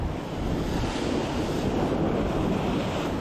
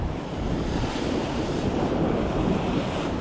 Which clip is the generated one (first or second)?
second